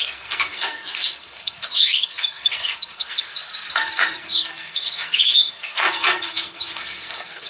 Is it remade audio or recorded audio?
remade